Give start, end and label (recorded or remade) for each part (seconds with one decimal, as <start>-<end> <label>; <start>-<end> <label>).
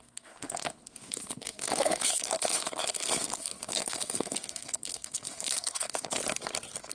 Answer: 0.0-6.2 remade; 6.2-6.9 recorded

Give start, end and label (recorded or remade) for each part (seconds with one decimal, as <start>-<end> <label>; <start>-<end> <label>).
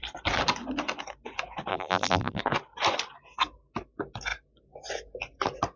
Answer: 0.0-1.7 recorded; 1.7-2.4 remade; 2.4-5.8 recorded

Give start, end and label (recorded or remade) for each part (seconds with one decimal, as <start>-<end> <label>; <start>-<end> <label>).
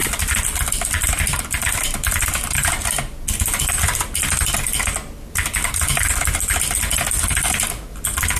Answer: 0.0-2.5 remade; 2.5-8.4 recorded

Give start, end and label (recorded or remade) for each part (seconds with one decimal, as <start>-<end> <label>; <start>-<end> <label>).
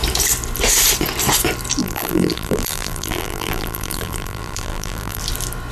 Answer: 0.0-1.8 recorded; 1.8-5.2 remade; 5.2-5.7 recorded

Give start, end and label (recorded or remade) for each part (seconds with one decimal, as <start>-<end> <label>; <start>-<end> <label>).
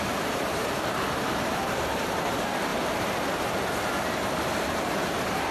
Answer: 0.0-2.7 remade; 2.7-4.1 recorded; 4.1-5.5 remade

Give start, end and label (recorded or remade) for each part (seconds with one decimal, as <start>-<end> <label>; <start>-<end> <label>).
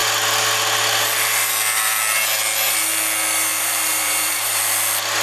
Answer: 0.0-3.5 recorded; 3.5-4.6 remade; 4.6-5.2 recorded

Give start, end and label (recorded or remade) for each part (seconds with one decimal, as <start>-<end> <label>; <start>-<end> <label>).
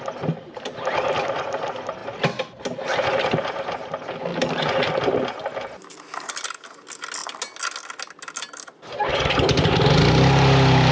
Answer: 0.0-10.9 recorded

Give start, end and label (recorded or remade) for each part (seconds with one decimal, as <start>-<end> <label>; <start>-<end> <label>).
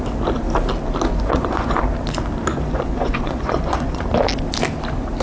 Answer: 0.0-1.1 recorded; 1.1-1.8 remade; 1.8-2.5 recorded; 2.5-4.0 remade; 4.0-5.2 recorded